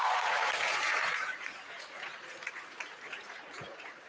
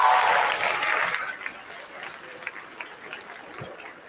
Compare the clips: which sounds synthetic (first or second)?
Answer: first